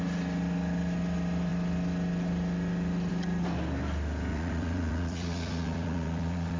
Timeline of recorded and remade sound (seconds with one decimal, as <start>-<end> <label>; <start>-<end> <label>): 0.0-4.3 recorded; 4.3-6.6 remade